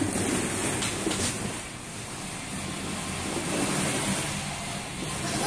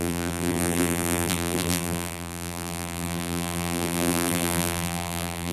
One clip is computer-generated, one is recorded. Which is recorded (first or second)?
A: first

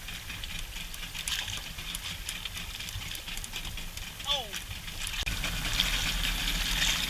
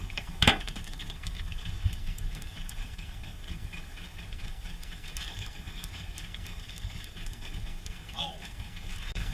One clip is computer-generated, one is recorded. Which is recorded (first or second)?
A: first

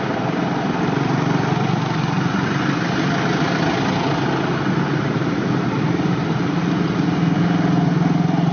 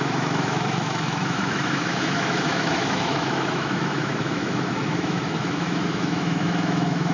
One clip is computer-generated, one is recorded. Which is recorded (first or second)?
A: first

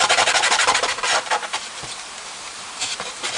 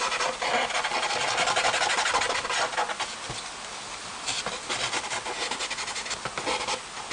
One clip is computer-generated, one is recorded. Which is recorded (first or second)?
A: second